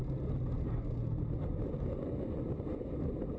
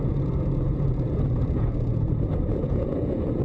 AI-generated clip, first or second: second